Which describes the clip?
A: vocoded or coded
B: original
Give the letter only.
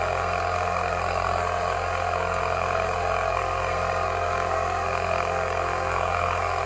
A